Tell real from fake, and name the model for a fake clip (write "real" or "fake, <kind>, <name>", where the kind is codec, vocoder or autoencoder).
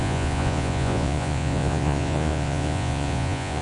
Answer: fake, vocoder, Vocos